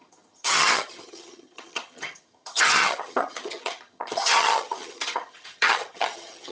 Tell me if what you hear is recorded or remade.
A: remade